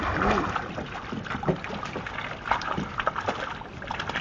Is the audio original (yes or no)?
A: yes